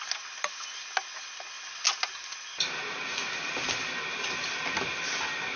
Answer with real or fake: real